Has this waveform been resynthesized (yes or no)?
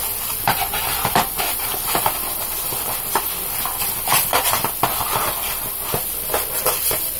no